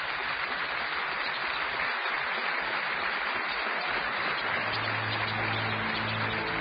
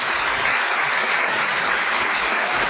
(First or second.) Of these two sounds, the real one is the first